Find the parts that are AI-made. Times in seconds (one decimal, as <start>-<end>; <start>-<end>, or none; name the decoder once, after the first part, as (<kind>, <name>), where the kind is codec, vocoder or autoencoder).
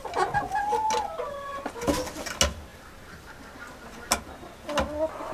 2.7-3.3 (vocoder, BigVGAN v2)